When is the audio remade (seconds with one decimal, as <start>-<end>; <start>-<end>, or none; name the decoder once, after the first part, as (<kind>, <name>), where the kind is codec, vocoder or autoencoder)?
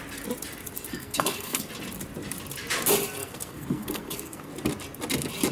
0.9-1.7 (codec, SNAC); 3.2-4.5